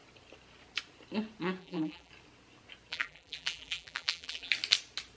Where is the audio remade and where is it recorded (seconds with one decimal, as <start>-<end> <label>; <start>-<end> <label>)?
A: 0.0-1.6 recorded; 1.6-2.1 remade; 2.1-2.9 recorded; 2.9-4.5 remade; 4.5-5.2 recorded